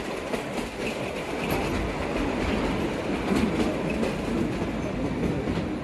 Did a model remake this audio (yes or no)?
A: no